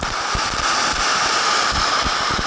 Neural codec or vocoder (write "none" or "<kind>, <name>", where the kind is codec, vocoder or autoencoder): none